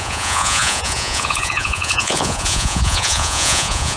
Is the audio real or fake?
fake